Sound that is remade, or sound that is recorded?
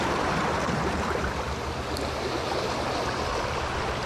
remade